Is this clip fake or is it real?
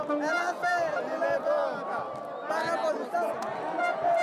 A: real